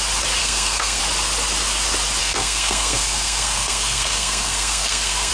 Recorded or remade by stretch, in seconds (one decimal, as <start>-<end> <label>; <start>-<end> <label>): 0.0-0.4 recorded; 0.4-1.0 remade; 1.0-2.2 recorded; 2.2-5.3 remade